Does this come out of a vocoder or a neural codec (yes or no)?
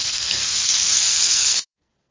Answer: yes